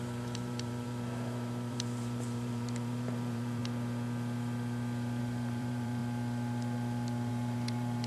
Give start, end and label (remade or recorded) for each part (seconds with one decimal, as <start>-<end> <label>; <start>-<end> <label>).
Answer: 0.0-3.6 remade; 3.6-5.2 recorded; 5.2-6.0 remade; 6.0-7.3 recorded; 7.3-8.1 remade